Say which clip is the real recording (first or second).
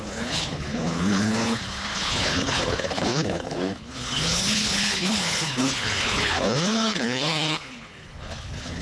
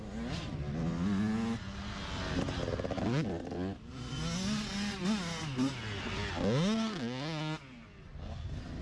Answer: second